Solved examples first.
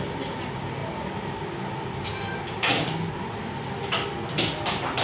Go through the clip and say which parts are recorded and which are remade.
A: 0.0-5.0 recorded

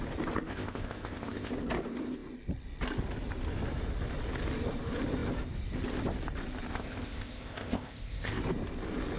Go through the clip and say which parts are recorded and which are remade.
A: 0.0-0.5 recorded; 0.5-1.5 remade; 1.5-6.7 recorded; 6.7-8.4 remade; 8.4-9.2 recorded